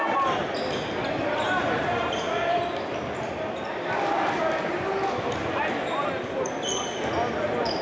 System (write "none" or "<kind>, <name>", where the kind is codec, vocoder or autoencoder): none